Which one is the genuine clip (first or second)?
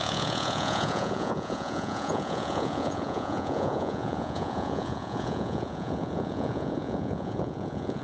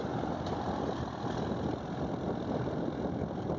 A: second